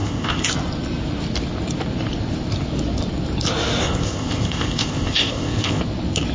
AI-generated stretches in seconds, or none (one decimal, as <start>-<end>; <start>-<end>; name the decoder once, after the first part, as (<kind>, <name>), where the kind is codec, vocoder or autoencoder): 0.0-0.5 (codec, ZipCodec); 3.8-5.8